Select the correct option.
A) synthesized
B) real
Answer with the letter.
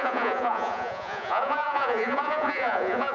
A